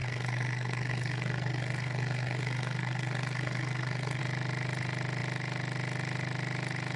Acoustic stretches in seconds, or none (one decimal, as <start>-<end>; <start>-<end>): 4.2-7.0